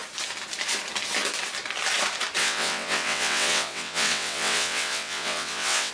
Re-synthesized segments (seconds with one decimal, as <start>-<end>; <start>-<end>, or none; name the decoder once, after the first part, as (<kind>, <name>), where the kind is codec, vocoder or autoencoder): 2.4-5.9 (vocoder, WaveNeXt)